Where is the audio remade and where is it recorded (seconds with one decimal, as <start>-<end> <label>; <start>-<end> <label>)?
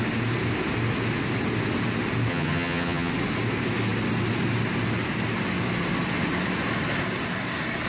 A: 0.0-2.3 recorded; 2.3-3.1 remade; 3.1-7.9 recorded